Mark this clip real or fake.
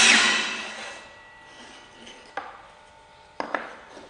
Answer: real